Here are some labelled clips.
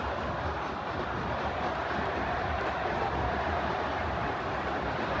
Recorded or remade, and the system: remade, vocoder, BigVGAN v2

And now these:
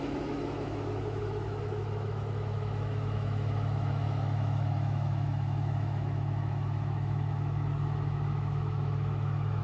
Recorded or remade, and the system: remade, autoencoder, DAC-VAE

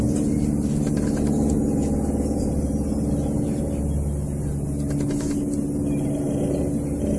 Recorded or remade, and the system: recorded